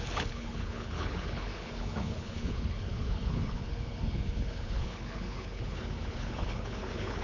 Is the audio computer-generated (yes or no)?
yes